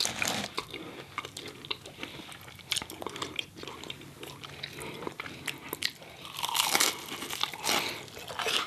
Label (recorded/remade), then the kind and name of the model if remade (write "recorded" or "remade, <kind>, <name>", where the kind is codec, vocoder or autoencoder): recorded